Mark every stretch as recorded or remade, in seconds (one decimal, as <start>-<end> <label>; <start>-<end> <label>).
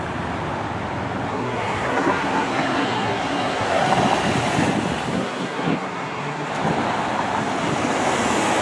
0.0-1.3 recorded; 1.3-3.8 remade; 3.8-5.1 recorded; 5.1-6.5 remade; 6.5-8.6 recorded